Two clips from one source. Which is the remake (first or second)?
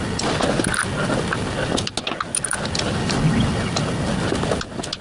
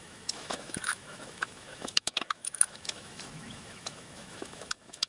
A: second